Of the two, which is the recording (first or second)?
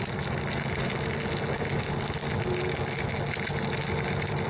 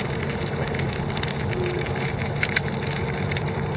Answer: first